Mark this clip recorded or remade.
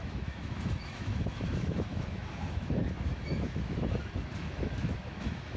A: remade